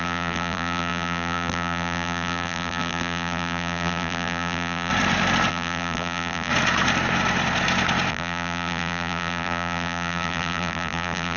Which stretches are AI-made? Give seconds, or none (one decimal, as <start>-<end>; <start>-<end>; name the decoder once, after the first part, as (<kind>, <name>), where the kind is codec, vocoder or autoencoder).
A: 0.0-4.9 (vocoder, BigVGAN v2); 5.5-6.5; 8.1-11.4

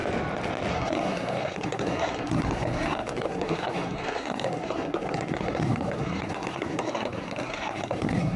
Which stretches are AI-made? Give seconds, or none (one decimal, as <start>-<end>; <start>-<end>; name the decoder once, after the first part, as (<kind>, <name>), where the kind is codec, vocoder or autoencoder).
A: 0.7-8.4 (codec, SNAC)

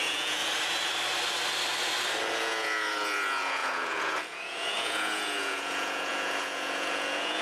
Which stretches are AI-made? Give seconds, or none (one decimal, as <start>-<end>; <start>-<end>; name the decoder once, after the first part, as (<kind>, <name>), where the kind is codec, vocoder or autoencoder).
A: 0.0-0.4 (vocoder, Vocos); 2.3-7.4